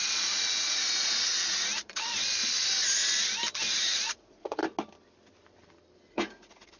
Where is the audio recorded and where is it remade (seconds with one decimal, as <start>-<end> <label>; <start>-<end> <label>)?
0.0-2.1 remade; 2.1-3.8 recorded; 3.8-4.6 remade; 4.6-6.1 recorded; 6.1-6.8 remade